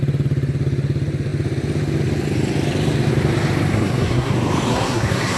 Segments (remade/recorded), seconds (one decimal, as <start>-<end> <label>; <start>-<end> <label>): 0.0-3.7 recorded; 3.7-4.3 remade; 4.3-4.7 recorded; 4.7-5.4 remade